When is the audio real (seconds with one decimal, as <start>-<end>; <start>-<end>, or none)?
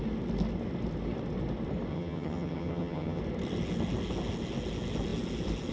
0.0-1.9; 3.2-5.7